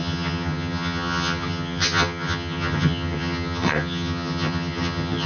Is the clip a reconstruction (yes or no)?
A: yes